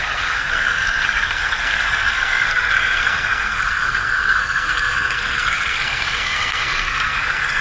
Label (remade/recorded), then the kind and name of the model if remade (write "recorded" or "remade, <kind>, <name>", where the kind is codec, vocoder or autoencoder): remade, codec, SNAC